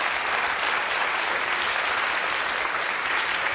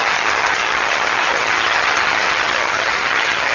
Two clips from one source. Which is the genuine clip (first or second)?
first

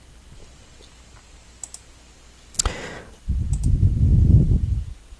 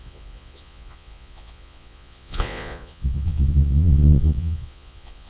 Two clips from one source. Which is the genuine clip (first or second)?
first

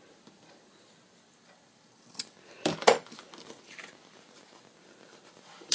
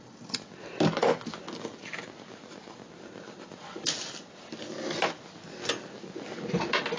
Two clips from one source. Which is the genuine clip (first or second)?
second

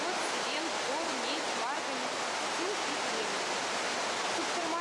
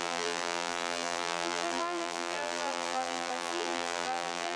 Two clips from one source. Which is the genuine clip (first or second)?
first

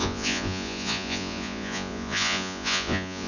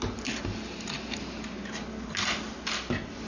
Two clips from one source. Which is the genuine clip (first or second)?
second